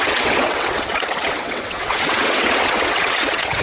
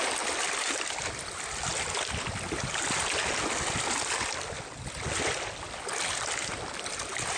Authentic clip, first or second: second